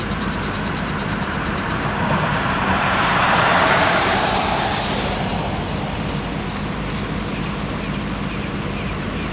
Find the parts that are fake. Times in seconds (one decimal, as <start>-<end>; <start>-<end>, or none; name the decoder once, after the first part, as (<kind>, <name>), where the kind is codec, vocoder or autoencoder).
0.0-5.3 (vocoder, BigVGAN v2); 8.3-9.3